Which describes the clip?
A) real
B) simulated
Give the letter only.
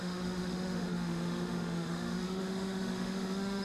B